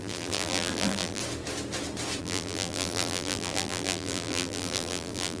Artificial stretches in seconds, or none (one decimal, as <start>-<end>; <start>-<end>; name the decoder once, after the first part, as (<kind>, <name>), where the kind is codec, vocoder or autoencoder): 0.0-1.2 (vocoder, BigVGAN v2); 2.2-5.4